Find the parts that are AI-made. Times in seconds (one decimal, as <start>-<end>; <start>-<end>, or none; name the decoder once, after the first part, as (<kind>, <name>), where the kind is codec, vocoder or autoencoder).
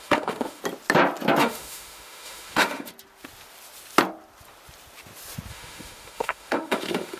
0.0-0.6 (autoencoder, DAC-VAE); 1.4-2.9; 5.5-7.2